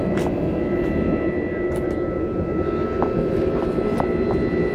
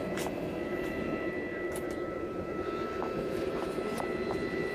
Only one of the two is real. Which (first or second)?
first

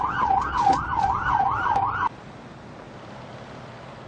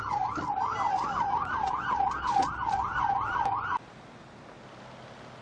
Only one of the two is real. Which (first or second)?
second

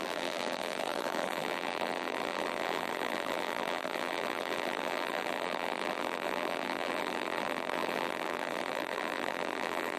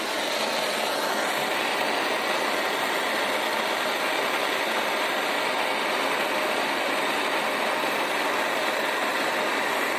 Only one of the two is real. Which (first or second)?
second